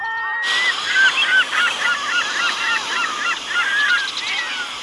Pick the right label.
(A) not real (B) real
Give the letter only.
B